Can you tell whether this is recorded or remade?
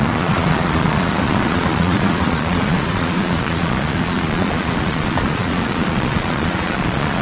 remade